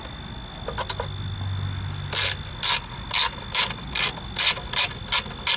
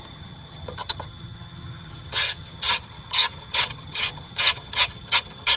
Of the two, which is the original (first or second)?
first